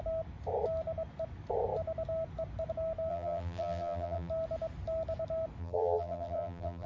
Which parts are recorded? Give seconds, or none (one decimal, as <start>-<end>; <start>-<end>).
0.0-3.1; 4.3-5.6